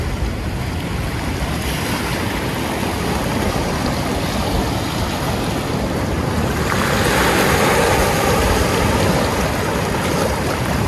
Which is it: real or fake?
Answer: real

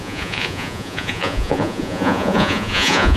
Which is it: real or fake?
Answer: fake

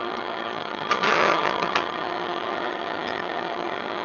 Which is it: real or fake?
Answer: fake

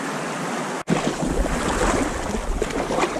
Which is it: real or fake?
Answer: real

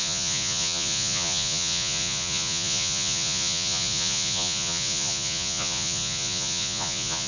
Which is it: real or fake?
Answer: fake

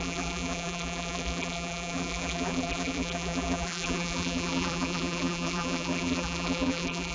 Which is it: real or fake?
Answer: fake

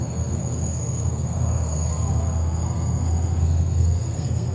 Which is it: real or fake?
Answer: fake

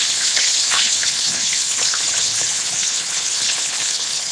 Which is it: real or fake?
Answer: fake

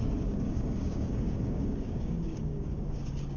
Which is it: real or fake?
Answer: fake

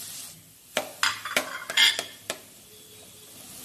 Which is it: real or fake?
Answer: real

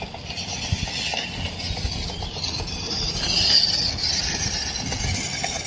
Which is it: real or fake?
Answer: real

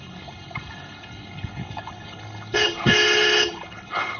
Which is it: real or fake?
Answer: fake